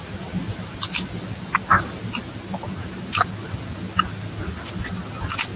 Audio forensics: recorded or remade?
recorded